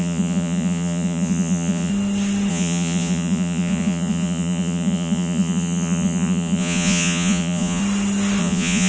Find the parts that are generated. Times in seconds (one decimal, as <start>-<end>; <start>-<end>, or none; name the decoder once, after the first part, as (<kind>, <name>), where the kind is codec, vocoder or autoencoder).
0.0-1.9 (vocoder, Vocos); 2.5-7.8; 8.4-8.9

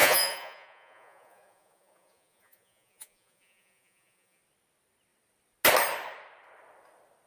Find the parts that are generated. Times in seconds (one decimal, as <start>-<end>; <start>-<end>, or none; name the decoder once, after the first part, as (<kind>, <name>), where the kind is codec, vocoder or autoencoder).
0.0-4.4 (vocoder, Vocos)

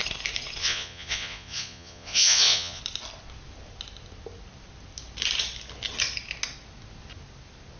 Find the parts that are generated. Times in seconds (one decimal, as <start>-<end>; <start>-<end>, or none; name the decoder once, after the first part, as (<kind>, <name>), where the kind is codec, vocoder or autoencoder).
0.6-2.8 (vocoder, Vocos)

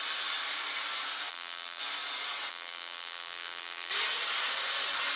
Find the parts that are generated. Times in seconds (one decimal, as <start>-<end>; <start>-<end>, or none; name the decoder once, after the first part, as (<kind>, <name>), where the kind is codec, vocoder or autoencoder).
1.3-1.8 (vocoder, BigVGAN v2); 2.5-3.9